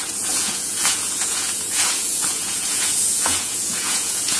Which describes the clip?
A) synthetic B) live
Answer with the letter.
A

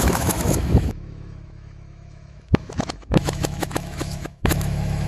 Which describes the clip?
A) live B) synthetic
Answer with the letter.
B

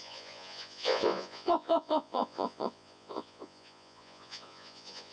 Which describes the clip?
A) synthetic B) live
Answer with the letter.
A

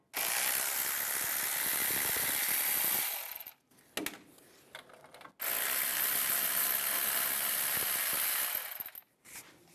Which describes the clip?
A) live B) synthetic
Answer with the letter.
A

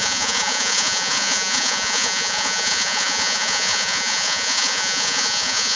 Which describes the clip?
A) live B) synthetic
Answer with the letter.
B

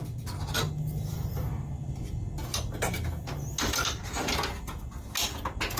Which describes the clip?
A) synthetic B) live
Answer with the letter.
B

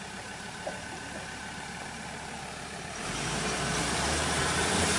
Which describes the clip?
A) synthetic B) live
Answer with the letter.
A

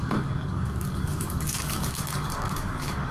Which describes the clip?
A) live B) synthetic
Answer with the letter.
B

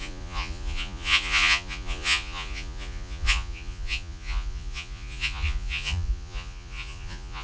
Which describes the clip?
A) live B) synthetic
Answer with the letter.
B